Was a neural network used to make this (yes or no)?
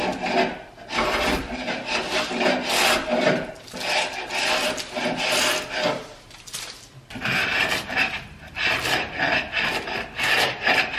no